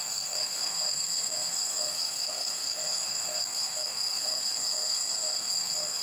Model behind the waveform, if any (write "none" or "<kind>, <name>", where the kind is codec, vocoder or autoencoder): codec, SNAC